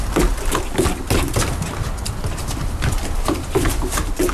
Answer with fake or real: real